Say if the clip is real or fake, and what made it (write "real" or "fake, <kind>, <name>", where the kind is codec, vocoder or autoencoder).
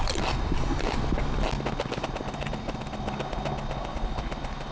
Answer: real